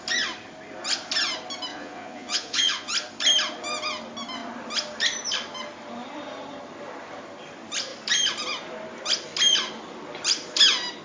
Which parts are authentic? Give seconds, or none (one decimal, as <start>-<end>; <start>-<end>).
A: 0.0-1.7; 2.9-11.0